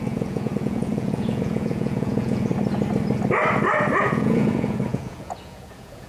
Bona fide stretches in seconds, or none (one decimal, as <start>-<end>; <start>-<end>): 2.5-4.0